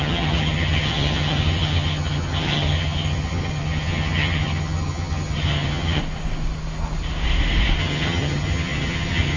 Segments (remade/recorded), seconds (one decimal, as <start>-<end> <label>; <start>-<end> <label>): 0.0-6.0 remade; 6.0-7.8 recorded; 7.8-9.4 remade

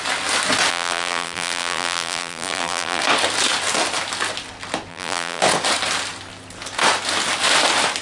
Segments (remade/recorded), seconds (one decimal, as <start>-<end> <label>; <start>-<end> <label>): 0.0-0.7 recorded; 0.7-3.0 remade; 3.0-4.9 recorded; 4.9-5.4 remade; 5.4-8.0 recorded

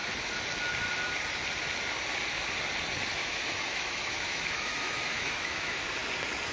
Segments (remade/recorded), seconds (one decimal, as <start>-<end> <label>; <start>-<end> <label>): 0.0-3.2 recorded; 3.2-5.8 remade; 5.8-6.5 recorded

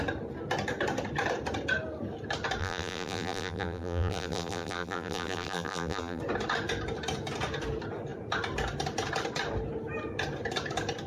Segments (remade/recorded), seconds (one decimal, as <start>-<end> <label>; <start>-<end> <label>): 0.0-2.6 recorded; 2.6-6.2 remade; 6.2-11.1 recorded

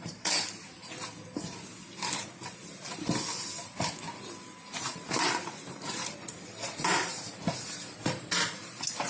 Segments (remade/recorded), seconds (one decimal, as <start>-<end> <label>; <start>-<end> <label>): 0.0-0.8 remade; 0.8-4.9 recorded; 4.9-9.1 remade

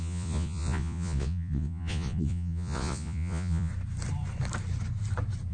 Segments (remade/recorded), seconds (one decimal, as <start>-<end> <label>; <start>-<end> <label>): 0.0-3.7 remade; 3.7-5.5 recorded